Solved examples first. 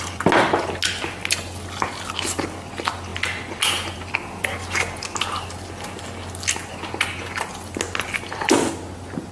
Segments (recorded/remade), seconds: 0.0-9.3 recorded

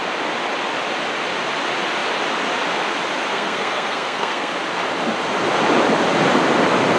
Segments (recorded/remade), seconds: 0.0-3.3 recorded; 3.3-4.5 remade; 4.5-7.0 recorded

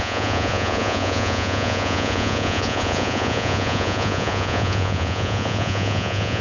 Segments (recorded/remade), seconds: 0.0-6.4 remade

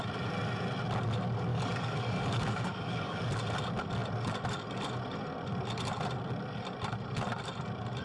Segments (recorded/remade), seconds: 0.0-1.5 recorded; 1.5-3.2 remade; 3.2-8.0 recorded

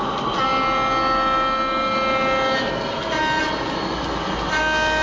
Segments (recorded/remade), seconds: 0.0-5.0 recorded

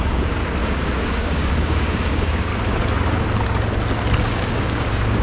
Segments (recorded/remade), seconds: 0.0-0.4 remade; 0.4-1.1 recorded; 1.1-2.5 remade; 2.5-4.2 recorded; 4.2-5.2 remade